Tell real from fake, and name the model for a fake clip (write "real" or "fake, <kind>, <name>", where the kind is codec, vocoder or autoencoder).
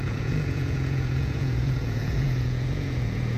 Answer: fake, vocoder, Vocos